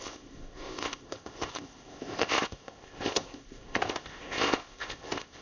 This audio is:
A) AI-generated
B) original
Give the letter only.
A